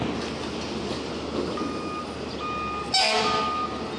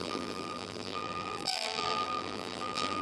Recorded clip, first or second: first